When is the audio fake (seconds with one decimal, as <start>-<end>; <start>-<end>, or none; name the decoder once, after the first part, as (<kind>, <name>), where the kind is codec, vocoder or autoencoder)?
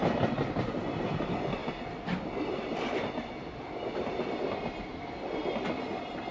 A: none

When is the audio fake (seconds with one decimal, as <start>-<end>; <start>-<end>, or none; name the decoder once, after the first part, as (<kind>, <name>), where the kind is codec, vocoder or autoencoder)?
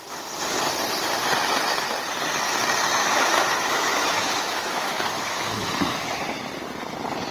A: 3.0-6.2 (autoencoder, DAC-VAE)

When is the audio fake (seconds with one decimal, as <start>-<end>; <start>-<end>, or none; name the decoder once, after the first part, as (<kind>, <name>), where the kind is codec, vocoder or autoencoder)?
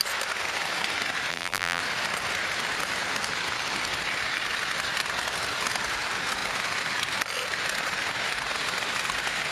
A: 1.3-1.8 (vocoder, BigVGAN v2)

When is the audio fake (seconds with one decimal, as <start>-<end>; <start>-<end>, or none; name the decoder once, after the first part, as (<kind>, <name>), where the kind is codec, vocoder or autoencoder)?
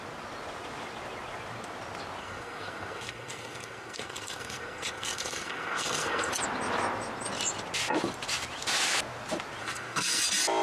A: 2.2-6.3 (codec, SNAC); 9.6-10.2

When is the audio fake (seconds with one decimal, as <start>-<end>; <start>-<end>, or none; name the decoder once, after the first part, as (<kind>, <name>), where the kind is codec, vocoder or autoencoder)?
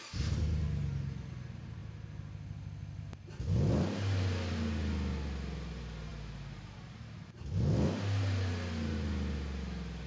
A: none